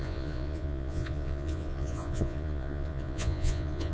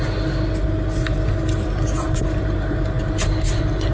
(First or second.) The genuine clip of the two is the second